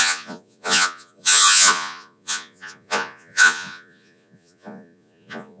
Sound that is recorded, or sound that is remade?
remade